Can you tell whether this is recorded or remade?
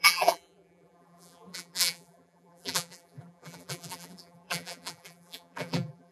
remade